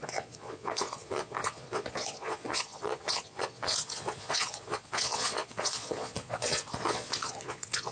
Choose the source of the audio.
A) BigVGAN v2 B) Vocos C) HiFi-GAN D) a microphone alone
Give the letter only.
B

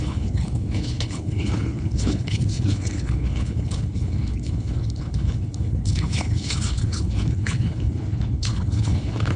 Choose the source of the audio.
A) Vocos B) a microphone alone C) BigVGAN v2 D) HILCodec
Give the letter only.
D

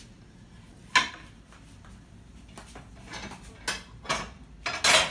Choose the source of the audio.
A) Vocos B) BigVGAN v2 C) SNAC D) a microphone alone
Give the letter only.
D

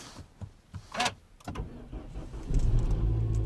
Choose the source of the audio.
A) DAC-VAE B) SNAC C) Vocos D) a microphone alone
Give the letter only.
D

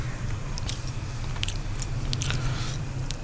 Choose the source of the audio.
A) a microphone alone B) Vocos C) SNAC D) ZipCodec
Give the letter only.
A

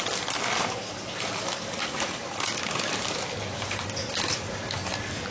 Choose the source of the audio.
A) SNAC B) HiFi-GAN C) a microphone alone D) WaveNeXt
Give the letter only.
C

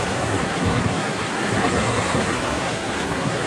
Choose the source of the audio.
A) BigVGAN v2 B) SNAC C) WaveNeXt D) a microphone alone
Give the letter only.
B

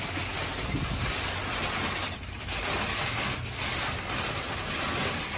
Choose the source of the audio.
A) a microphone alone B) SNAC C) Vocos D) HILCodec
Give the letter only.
A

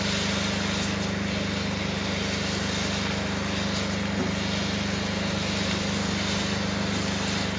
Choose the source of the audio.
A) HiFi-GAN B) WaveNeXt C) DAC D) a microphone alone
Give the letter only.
D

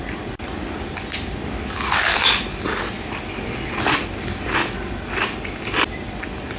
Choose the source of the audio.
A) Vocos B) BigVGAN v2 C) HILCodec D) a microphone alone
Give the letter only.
D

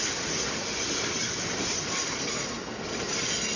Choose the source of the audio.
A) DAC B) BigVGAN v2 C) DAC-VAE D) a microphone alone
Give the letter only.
D